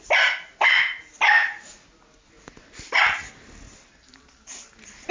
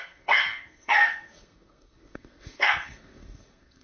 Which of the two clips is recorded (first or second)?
first